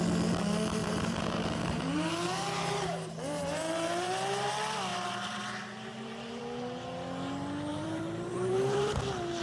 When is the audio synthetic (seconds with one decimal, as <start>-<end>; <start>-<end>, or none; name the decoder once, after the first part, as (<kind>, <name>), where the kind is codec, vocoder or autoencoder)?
0.8-4.5 (vocoder, BigVGAN v2); 4.9-6.4; 7.7-9.0

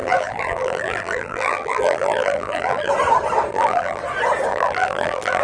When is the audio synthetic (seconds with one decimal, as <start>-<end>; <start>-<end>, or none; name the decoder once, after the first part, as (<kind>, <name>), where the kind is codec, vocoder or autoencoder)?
0.0-2.9 (vocoder, BigVGAN v2); 3.5-4.0; 4.5-5.4